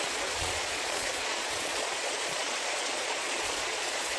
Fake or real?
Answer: fake